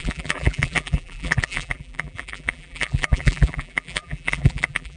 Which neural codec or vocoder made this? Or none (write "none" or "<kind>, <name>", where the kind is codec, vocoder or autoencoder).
vocoder, BigVGAN v2